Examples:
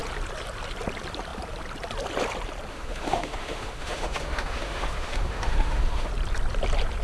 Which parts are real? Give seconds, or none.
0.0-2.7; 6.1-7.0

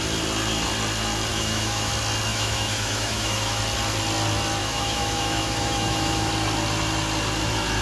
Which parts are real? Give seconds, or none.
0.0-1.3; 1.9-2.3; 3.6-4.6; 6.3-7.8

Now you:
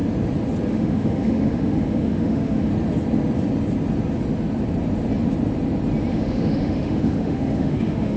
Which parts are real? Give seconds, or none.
0.0-0.7; 2.7-6.1

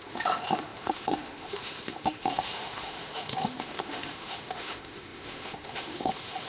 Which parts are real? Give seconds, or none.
none